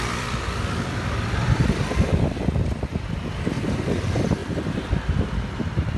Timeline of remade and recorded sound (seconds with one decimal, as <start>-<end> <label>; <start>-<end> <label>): 0.0-6.0 remade